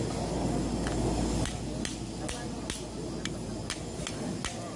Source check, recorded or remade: recorded